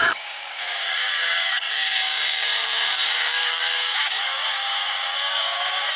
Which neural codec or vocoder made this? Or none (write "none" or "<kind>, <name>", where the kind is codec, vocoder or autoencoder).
codec, DAC